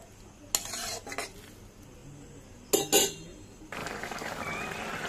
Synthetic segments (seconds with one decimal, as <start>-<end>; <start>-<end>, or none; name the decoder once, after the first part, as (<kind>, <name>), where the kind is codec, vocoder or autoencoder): 3.8-4.4 (codec, DAC)